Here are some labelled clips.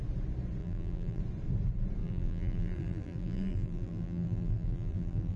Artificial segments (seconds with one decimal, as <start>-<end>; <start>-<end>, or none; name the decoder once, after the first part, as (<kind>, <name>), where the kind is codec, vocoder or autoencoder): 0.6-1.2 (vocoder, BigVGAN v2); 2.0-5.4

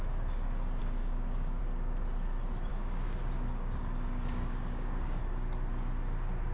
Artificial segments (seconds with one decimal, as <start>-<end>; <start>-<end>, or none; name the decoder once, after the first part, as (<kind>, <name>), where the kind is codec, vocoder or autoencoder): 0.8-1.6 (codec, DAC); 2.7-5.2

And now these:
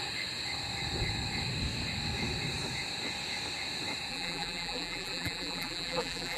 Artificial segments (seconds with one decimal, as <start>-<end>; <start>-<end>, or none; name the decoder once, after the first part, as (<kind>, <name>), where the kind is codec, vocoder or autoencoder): 4.1-6.4 (vocoder, BigVGAN v2)

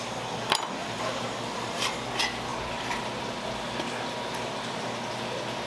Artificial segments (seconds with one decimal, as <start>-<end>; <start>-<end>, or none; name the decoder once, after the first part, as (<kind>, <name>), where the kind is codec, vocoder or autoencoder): 0.8-1.9 (vocoder, BigVGAN v2)

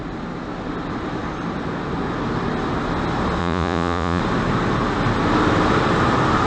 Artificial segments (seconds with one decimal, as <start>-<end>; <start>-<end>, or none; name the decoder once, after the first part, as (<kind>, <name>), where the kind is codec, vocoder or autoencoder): 3.4-4.2 (vocoder, Vocos)